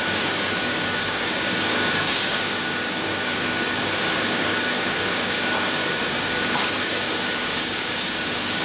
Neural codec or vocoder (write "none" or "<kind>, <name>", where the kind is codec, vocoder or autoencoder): codec, DAC